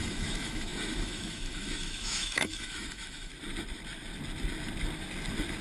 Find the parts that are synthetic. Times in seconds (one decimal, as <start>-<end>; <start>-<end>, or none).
0.0-3.3